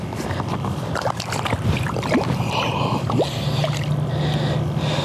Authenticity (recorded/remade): recorded